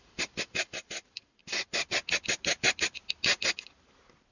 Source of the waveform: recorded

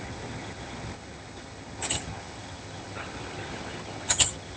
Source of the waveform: remade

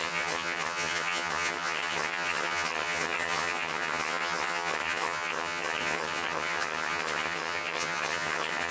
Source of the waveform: remade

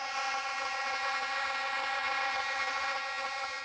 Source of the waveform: remade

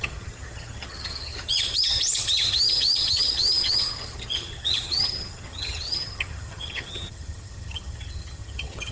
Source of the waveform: remade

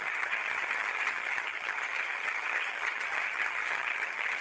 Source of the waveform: remade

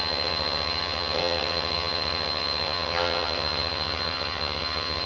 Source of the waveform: remade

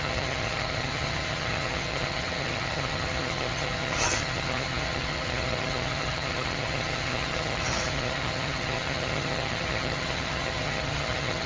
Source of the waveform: remade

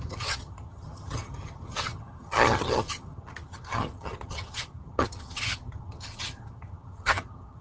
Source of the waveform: remade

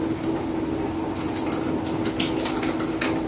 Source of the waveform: recorded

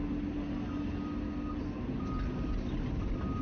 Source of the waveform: recorded